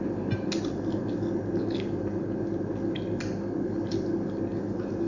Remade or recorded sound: recorded